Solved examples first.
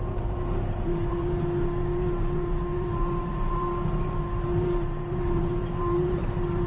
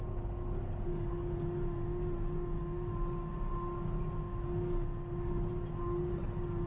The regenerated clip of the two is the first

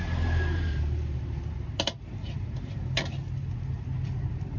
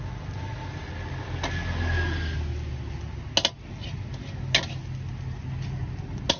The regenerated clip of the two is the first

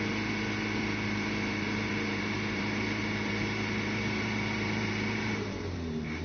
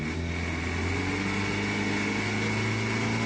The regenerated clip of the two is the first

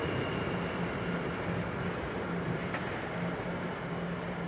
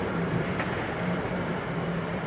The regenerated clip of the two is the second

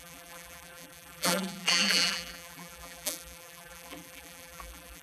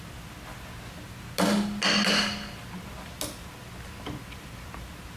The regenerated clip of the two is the first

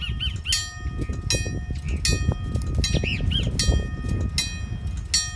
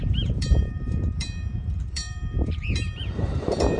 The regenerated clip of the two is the second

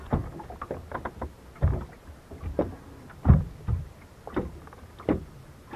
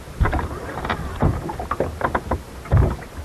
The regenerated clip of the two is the second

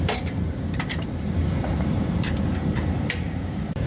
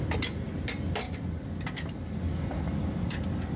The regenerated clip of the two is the first